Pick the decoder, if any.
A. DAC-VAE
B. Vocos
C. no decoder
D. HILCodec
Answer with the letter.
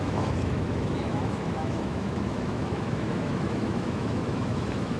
A